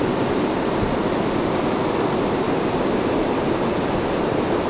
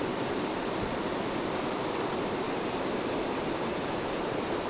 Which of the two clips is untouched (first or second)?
first